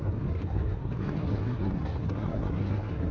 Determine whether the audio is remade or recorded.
remade